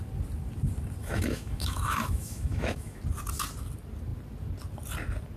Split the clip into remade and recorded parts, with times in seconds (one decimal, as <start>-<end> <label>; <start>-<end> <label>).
0.0-1.0 recorded; 1.0-3.0 remade; 3.0-5.4 recorded